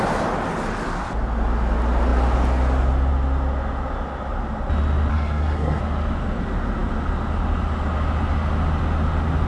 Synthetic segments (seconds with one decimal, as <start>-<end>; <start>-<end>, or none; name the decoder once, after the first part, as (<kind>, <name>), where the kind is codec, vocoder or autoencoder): 5.1-5.8 (codec, SNAC)

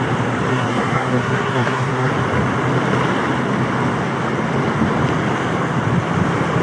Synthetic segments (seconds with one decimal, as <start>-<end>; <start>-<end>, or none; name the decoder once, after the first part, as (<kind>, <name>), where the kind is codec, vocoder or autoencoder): 0.5-2.1 (codec, SNAC)

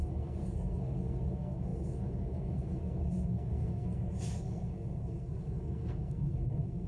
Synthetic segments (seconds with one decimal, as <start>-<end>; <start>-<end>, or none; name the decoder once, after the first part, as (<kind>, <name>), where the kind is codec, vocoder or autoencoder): 0.0-6.9 (codec, SNAC)

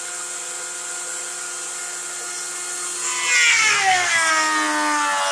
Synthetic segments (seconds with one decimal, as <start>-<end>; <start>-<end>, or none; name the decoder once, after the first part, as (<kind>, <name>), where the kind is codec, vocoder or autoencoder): 3.5-4.3 (codec, SNAC)

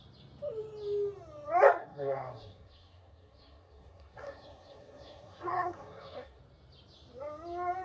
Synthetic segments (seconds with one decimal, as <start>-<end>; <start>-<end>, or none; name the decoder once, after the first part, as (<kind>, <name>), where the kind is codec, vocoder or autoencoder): 1.8-6.4 (codec, SNAC)

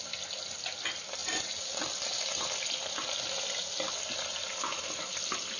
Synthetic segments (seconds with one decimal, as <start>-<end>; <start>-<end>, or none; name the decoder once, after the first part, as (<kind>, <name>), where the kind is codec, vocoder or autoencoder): none

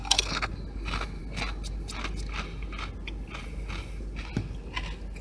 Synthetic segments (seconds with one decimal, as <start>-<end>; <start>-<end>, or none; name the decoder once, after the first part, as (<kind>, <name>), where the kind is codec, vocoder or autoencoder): 0.0-0.5 (codec, SNAC)